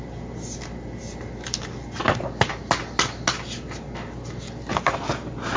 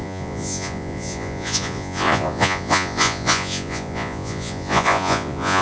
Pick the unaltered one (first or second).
first